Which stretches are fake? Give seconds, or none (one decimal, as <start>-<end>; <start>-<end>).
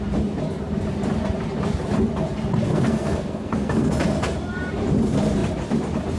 2.7-3.9